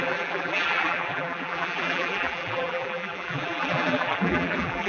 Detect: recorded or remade remade